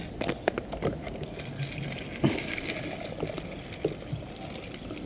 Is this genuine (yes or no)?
yes